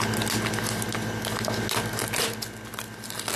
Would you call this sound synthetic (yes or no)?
no